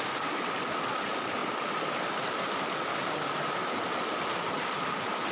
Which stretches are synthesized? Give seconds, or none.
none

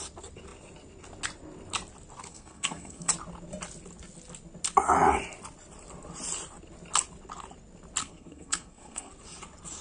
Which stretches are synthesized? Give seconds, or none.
2.3-3.1 (codec, SNAC); 8.0-9.1

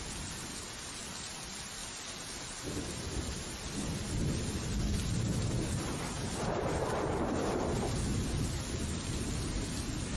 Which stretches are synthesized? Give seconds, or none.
none

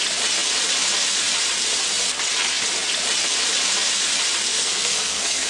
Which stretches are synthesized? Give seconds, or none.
4.5-5.5 (codec, SNAC)